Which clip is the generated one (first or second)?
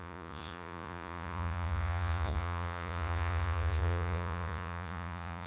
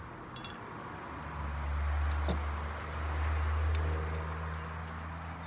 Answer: first